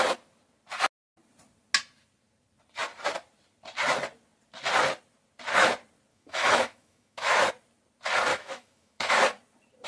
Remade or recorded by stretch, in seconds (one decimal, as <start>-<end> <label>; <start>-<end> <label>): 0.0-6.1 recorded; 6.1-7.5 remade; 7.5-8.3 recorded; 8.3-9.2 remade; 9.2-9.9 recorded